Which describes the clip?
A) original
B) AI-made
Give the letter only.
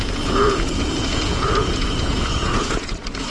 B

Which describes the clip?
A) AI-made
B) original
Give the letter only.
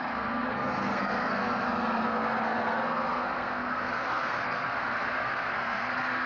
A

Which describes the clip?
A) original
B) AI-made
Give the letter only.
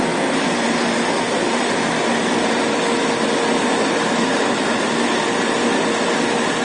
A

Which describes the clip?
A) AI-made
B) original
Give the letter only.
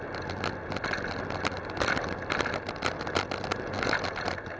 B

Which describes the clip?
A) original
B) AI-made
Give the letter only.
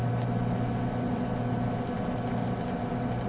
A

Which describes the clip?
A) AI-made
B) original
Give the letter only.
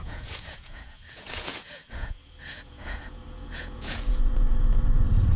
A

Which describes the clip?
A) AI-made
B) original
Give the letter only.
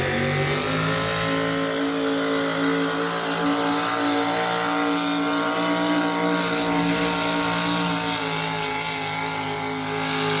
B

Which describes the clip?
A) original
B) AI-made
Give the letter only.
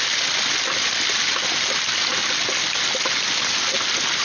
A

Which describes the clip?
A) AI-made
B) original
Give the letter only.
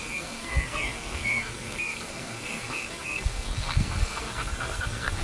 A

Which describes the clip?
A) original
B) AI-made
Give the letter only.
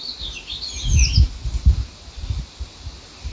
A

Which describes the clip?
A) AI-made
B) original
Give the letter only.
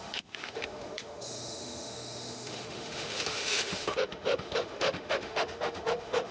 A